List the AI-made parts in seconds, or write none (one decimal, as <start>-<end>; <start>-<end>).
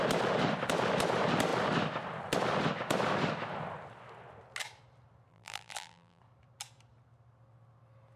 5.3-6.2